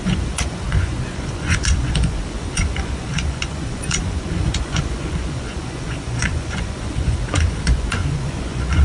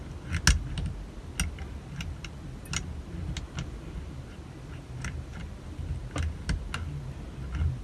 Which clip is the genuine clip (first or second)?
second